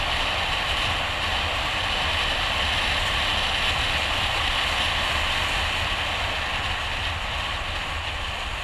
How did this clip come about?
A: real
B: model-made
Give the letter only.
A